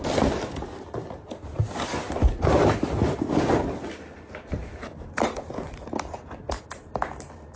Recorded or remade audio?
recorded